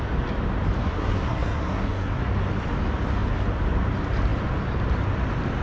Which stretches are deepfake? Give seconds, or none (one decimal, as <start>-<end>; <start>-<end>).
0.8-2.2